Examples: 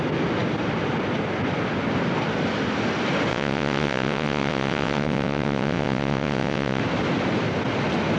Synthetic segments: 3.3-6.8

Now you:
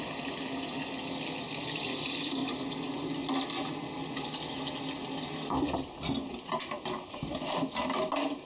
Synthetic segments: none

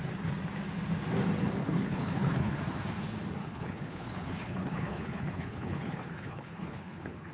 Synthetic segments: 1.6-2.6; 3.4-7.3

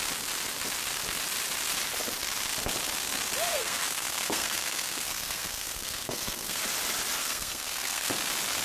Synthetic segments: 3.5-6.6; 7.2-8.1

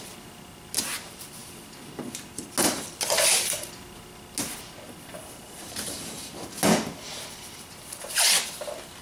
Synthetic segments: none

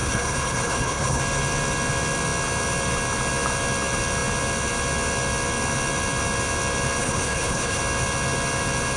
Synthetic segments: 0.0-1.2; 7.0-7.8

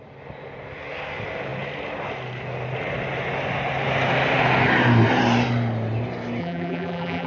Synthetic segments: 6.4-7.3

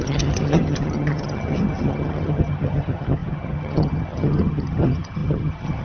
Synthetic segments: 0.0-5.8